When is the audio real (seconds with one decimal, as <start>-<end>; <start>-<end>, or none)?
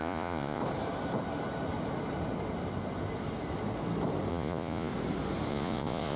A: 0.6-4.3; 4.9-5.5